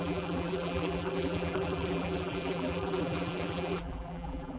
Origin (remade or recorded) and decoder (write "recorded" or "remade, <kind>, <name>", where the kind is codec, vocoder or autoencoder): remade, vocoder, BigVGAN v2